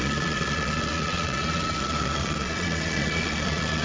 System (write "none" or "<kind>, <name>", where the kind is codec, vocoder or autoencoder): vocoder, Vocos